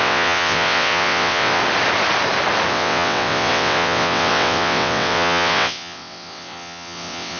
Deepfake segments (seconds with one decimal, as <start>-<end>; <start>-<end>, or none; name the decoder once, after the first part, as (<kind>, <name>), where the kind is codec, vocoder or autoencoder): 0.0-1.6 (vocoder, WaveNeXt); 2.7-7.4